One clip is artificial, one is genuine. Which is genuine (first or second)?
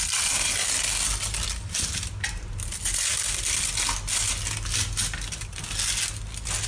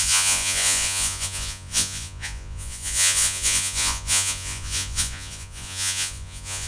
first